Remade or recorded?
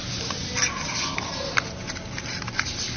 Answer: recorded